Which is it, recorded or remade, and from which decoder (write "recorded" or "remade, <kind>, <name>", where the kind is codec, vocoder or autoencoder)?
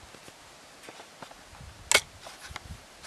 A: recorded